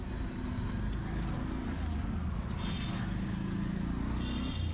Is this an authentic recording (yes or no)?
yes